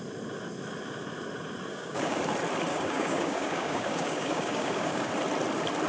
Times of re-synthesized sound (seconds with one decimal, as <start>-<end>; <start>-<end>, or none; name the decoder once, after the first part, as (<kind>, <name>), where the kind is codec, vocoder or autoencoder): 1.7-2.2 (codec, DAC); 2.7-5.1